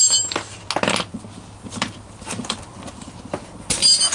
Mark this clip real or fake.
real